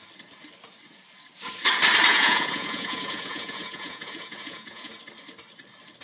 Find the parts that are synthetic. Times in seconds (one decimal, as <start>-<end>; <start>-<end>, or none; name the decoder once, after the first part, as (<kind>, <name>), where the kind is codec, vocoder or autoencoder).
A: 2.1-4.9 (vocoder, Vocos)